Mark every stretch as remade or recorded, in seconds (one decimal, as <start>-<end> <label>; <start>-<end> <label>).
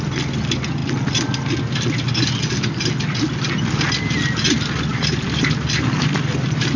0.0-6.8 recorded